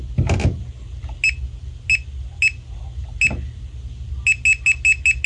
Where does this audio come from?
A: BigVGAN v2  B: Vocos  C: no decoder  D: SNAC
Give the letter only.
C